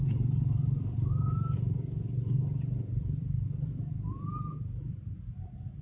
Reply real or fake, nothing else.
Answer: fake